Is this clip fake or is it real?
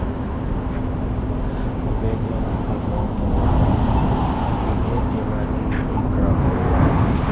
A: real